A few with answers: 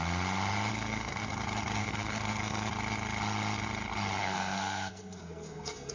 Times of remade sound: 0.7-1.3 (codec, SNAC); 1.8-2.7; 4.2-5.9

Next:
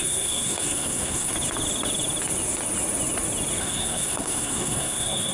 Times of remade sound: 0.0-1.3 (codec, SNAC); 3.6-5.3